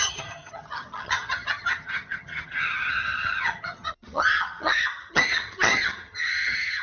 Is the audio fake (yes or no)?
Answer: yes